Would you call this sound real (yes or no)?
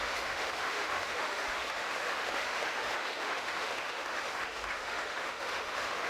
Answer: no